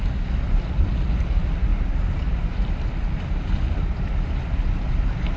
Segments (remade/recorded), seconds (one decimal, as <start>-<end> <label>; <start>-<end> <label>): 0.0-5.4 recorded